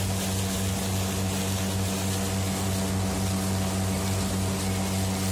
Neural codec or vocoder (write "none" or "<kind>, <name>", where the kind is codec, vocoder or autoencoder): none